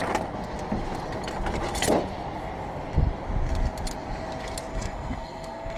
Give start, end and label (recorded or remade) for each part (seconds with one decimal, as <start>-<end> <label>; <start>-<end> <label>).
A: 0.0-4.7 recorded; 4.7-5.8 remade